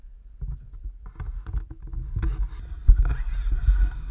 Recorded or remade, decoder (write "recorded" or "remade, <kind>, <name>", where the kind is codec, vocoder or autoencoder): recorded